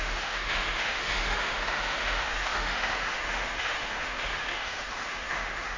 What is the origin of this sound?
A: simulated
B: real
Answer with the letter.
A